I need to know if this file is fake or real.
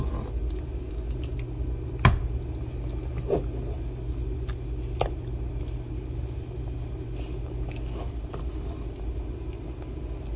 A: real